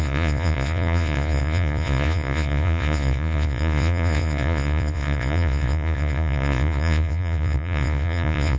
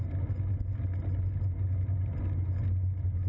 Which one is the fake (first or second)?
first